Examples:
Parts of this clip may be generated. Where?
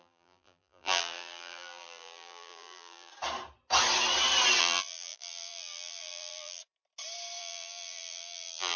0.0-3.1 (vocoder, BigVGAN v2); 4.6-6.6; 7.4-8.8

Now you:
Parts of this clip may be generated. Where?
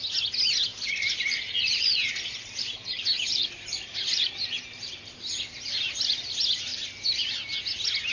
0.7-5.2 (vocoder, BigVGAN v2); 6.7-7.6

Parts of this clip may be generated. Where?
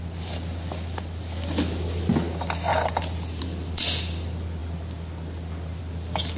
none